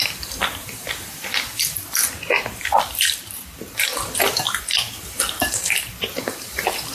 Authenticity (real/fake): fake